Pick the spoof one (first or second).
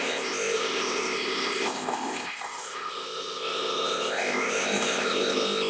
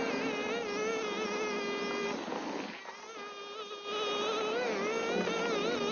first